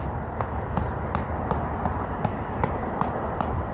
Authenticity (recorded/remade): remade